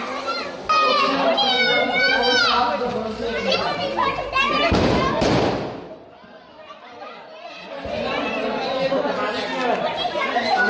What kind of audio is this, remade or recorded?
recorded